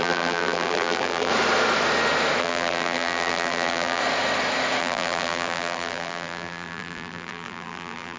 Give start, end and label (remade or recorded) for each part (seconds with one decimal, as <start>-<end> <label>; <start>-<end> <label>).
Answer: 0.0-1.3 remade; 1.3-2.4 recorded; 2.4-4.0 remade; 4.0-4.8 recorded; 4.8-8.2 remade

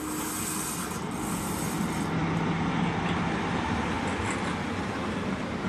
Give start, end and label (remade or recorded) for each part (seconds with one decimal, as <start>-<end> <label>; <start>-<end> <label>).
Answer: 0.0-5.7 recorded

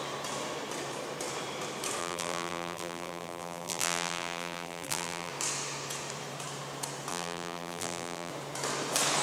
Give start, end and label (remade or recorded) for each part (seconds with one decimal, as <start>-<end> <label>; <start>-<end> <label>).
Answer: 0.0-2.0 recorded; 2.0-5.3 remade; 5.3-7.1 recorded; 7.1-8.3 remade; 8.3-9.2 recorded

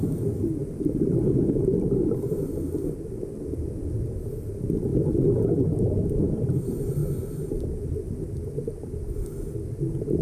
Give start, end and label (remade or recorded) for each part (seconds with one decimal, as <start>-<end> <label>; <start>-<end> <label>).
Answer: 0.0-10.2 recorded

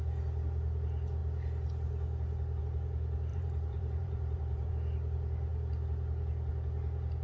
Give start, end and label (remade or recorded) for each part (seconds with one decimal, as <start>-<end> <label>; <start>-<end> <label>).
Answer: 0.0-3.3 recorded; 3.3-4.7 remade; 4.7-7.2 recorded

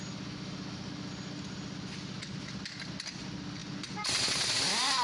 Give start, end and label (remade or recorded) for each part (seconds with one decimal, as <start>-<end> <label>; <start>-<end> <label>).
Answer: 0.0-5.0 recorded

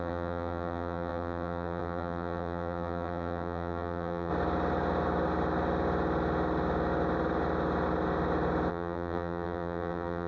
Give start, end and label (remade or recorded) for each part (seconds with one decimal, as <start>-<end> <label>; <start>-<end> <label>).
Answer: 0.0-4.3 remade; 4.3-8.7 recorded; 8.7-10.3 remade

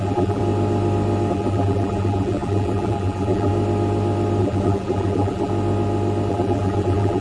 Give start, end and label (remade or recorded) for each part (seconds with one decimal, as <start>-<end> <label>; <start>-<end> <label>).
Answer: 0.0-0.4 remade; 0.4-1.3 recorded; 1.3-3.5 remade; 3.5-4.4 recorded; 4.4-5.5 remade; 5.5-6.3 recorded; 6.3-7.2 remade